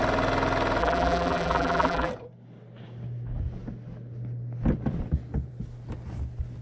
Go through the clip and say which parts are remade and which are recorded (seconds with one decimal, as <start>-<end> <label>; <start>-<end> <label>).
0.0-0.8 recorded; 0.8-2.1 remade; 2.1-6.6 recorded